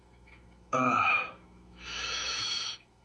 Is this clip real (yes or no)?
no